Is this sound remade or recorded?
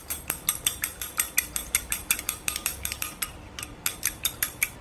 remade